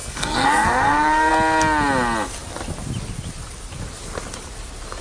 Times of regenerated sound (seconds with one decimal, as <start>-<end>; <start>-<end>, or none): 0.0-1.3